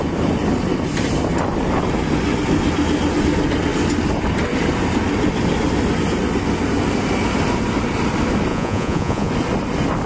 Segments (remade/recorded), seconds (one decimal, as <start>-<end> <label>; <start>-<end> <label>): 0.0-8.5 recorded; 8.5-9.3 remade; 9.3-10.1 recorded